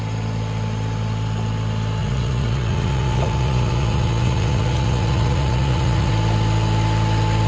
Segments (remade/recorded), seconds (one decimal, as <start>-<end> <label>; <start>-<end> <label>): 0.0-2.0 recorded; 2.0-6.1 remade; 6.1-7.5 recorded